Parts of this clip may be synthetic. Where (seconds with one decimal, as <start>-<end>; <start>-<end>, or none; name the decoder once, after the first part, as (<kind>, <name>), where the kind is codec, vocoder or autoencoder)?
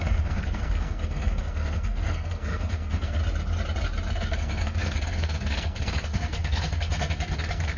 0.0-3.2 (codec, SNAC); 4.1-7.8